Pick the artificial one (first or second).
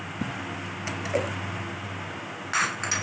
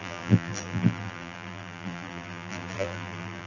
second